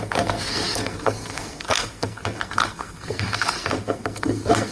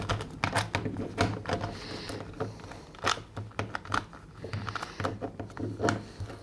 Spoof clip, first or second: first